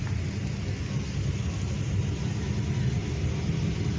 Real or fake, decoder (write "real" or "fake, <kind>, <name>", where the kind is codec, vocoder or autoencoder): real